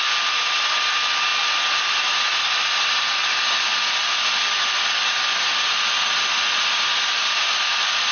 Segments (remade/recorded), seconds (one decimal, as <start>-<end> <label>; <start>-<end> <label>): 0.0-8.1 recorded